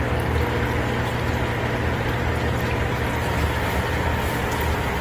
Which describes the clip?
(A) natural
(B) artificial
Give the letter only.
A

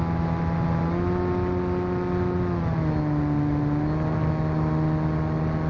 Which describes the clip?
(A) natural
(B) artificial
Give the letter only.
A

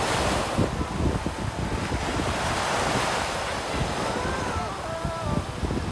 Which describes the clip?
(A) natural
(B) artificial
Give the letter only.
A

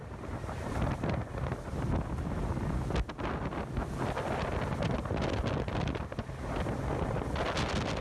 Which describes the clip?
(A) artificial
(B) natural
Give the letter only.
B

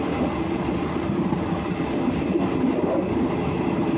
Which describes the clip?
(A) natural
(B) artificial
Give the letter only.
A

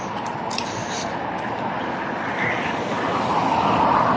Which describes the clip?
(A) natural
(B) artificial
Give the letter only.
A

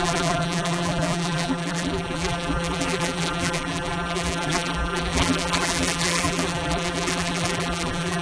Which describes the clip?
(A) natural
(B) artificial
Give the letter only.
B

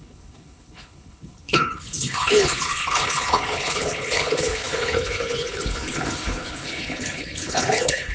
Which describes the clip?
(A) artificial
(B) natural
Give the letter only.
A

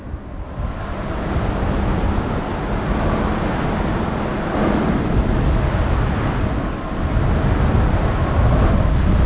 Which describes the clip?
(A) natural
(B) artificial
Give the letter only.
A